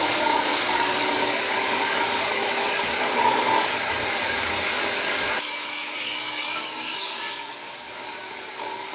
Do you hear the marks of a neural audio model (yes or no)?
yes